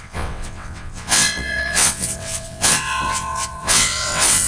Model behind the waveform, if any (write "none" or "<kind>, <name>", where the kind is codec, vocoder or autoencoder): vocoder, WaveNeXt